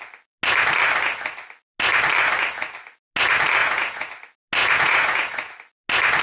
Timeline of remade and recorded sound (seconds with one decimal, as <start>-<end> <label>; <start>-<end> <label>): 0.0-3.6 recorded; 3.6-4.1 remade; 4.1-4.6 recorded; 4.6-5.5 remade; 5.5-6.2 recorded